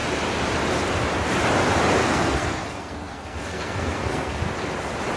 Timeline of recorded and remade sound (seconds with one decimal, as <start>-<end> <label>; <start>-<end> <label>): 0.0-2.0 recorded; 2.0-4.4 remade; 4.4-5.2 recorded